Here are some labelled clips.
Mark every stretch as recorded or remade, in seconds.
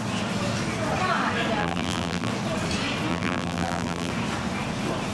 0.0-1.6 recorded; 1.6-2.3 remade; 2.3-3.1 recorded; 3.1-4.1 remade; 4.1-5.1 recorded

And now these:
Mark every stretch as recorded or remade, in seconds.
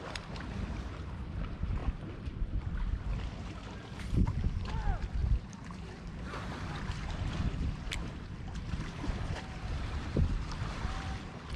0.0-11.6 remade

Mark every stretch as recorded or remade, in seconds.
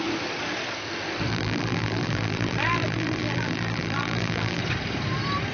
0.0-1.3 recorded; 1.3-4.6 remade; 4.6-5.5 recorded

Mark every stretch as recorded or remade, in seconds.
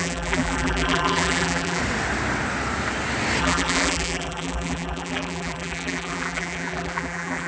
0.0-1.8 remade; 1.8-3.4 recorded; 3.4-7.5 remade